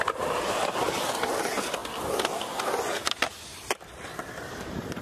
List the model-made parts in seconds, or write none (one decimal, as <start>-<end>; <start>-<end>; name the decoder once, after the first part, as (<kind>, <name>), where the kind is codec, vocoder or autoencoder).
none